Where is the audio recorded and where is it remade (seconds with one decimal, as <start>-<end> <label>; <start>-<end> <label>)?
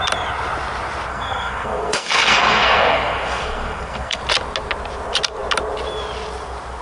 0.0-1.1 recorded; 1.1-4.2 remade; 4.2-6.8 recorded